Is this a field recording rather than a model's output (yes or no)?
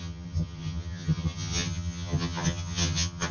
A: no